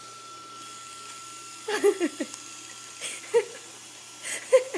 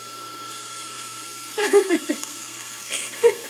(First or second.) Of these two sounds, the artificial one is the second